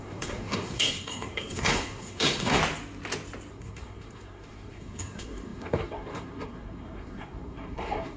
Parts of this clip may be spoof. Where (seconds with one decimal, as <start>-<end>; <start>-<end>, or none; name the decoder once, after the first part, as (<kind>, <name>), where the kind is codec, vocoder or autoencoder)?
0.0-2.6 (codec, SNAC); 3.5-8.2